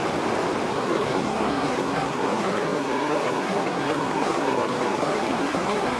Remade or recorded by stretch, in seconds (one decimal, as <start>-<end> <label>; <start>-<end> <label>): 0.0-0.7 recorded; 0.7-6.0 remade